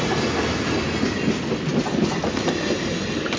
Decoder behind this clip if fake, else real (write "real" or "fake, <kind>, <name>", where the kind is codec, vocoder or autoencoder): real